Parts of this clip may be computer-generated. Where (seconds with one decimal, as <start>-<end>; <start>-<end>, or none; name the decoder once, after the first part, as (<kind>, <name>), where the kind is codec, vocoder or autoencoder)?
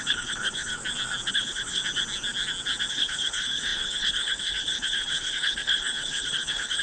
0.0-0.8 (codec, HILCodec); 1.3-1.8; 2.9-6.8